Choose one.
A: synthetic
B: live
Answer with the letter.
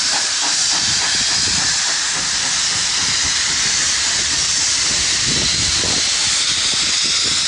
B